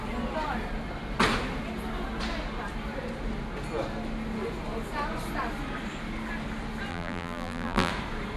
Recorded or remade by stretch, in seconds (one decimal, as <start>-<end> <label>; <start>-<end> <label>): 0.0-6.9 recorded; 6.9-7.9 remade; 7.9-8.4 recorded